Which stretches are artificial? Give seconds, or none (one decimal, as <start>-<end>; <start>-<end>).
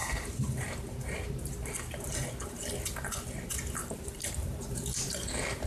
0.0-0.7; 3.8-4.7